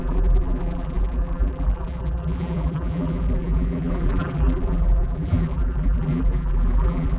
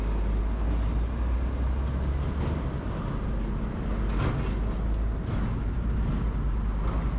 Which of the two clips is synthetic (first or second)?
first